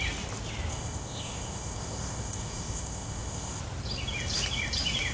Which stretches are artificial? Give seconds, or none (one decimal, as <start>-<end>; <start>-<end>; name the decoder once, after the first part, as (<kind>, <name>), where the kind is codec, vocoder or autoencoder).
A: 0.7-3.6 (codec, ZipCodec)